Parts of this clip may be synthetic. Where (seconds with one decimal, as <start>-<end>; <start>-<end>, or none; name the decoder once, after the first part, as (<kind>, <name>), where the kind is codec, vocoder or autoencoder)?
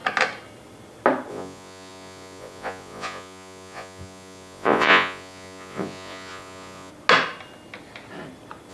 1.3-6.9 (vocoder, Vocos)